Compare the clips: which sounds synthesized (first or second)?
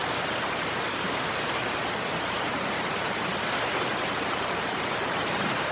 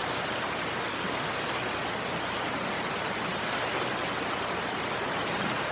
first